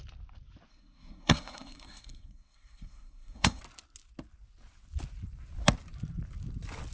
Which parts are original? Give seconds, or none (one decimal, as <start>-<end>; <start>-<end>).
0.0-0.7; 3.6-6.9